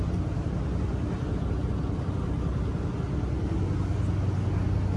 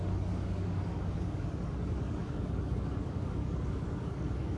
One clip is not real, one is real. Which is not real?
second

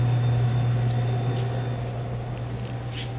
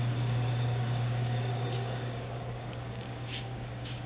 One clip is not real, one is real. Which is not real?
second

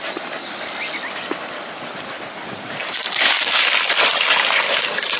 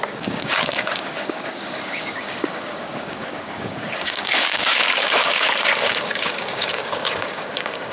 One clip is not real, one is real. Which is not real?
second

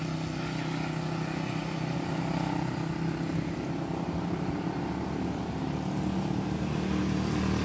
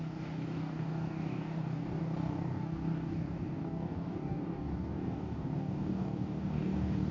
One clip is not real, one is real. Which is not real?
second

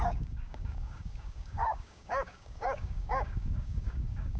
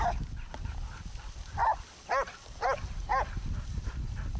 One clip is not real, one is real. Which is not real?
first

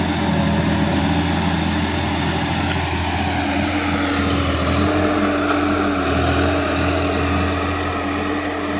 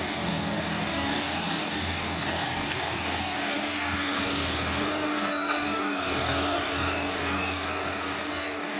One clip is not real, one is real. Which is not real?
second